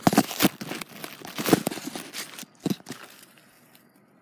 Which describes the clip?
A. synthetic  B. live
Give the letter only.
B